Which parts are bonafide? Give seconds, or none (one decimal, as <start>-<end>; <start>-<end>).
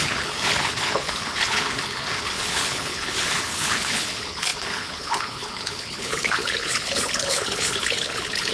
none